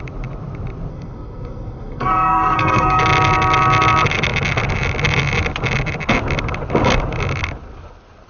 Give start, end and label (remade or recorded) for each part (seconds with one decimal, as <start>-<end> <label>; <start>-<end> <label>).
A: 0.0-0.9 recorded; 0.9-3.0 remade; 3.0-8.3 recorded